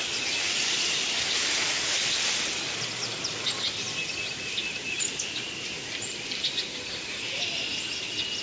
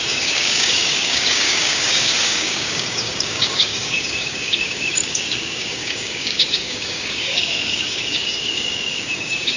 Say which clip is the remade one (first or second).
second